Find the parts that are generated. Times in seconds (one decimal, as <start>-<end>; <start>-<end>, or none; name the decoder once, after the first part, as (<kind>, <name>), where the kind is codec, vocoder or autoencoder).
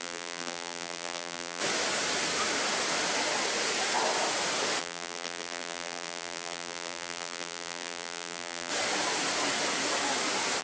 0.0-1.6 (vocoder, BigVGAN v2); 4.8-8.7